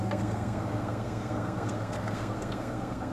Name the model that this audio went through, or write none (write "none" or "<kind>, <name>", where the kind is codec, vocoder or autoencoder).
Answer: codec, SNAC